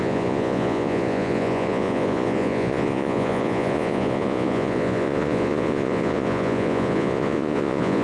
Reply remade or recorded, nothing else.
remade